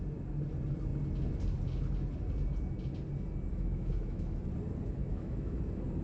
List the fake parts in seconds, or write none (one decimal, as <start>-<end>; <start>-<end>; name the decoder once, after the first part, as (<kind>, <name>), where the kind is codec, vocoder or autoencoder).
3.5-4.4 (autoencoder, DAC-VAE); 5.0-5.6